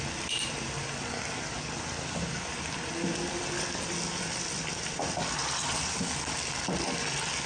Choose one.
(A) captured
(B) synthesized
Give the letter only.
A